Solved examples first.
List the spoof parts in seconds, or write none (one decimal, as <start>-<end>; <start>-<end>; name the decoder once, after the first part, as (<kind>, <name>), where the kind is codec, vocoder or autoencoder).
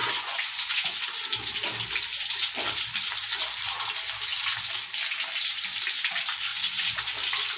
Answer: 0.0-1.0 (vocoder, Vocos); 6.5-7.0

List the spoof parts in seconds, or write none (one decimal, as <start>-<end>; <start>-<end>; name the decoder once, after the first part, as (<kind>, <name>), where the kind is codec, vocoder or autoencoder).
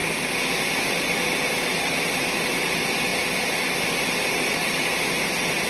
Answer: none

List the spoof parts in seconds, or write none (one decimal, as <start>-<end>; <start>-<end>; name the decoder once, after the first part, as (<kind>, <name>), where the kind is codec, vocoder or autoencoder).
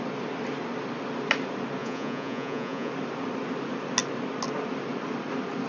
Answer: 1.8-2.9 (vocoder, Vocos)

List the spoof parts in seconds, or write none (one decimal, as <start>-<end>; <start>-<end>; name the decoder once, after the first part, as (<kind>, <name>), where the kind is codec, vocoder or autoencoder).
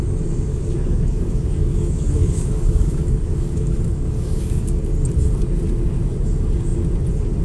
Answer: 0.5-4.8 (codec, DAC)